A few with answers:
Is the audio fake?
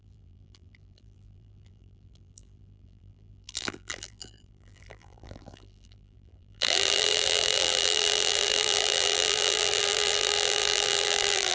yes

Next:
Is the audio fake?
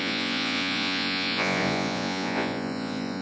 yes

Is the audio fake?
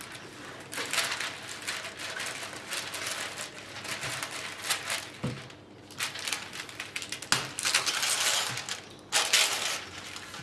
no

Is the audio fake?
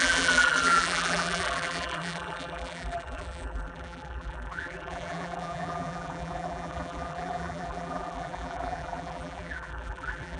yes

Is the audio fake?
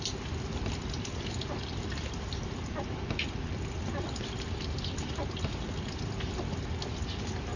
no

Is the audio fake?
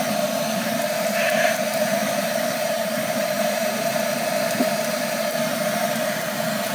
yes